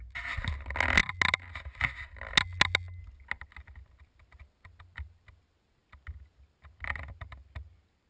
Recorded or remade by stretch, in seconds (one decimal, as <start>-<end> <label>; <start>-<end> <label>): 0.0-8.1 recorded